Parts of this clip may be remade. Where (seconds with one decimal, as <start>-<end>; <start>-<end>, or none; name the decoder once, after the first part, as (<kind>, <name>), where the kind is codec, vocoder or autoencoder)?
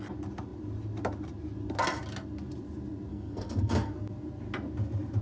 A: 3.1-3.9 (codec, SNAC)